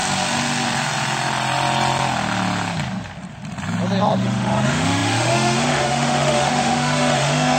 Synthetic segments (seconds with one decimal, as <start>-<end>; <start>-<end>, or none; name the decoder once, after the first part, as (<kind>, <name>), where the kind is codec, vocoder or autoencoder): 4.0-7.6 (autoencoder, DAC-VAE)